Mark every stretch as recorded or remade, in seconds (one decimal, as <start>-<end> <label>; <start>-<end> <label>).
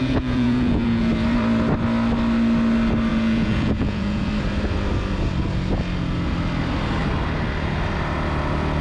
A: 0.0-1.1 remade; 1.1-3.1 recorded; 3.1-4.3 remade; 4.3-8.8 recorded